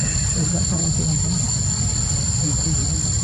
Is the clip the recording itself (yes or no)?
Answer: yes